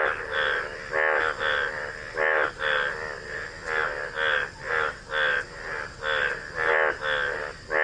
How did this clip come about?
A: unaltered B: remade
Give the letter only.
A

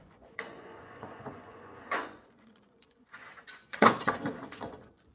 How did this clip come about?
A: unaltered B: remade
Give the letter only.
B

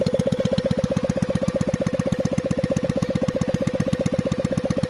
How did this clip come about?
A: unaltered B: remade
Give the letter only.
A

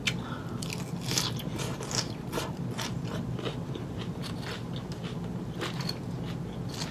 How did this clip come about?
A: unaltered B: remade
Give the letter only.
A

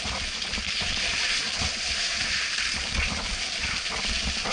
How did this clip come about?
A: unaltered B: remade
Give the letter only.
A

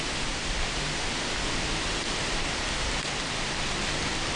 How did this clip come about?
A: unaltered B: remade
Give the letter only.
A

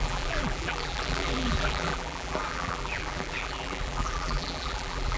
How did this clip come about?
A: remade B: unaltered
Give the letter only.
A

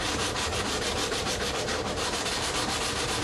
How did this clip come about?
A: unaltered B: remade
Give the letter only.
B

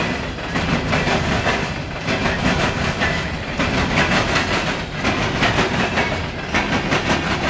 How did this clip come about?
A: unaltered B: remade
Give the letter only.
A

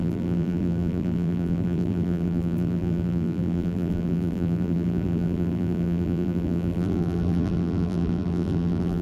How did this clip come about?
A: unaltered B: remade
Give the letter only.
B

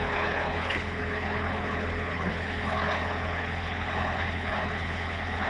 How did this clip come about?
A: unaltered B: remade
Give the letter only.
B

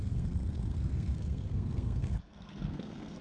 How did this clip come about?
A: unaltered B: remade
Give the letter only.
B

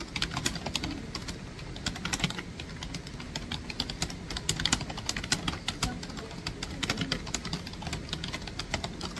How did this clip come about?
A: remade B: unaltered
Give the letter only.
B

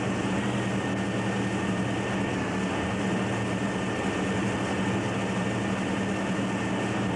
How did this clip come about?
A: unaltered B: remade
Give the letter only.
A